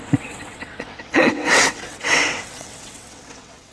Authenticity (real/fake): fake